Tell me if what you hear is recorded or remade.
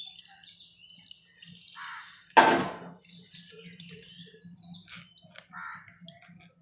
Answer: recorded